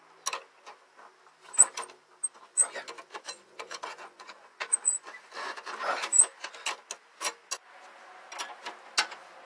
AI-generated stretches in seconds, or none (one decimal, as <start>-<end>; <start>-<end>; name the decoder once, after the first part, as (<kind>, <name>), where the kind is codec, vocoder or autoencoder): 3.1-5.8 (vocoder, Vocos)